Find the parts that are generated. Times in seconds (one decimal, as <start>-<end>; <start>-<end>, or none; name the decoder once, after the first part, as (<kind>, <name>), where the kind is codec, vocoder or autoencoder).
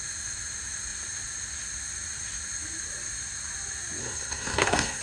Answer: 4.0-5.0 (codec, SNAC)